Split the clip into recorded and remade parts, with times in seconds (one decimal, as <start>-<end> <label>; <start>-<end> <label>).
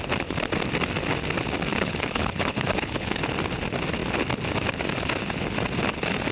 0.0-1.7 recorded; 1.7-3.2 remade; 3.2-6.3 recorded